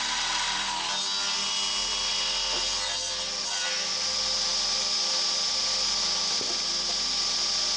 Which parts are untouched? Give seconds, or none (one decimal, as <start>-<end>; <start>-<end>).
0.0-7.8